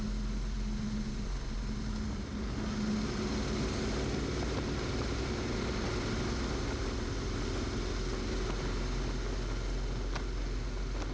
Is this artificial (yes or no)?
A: no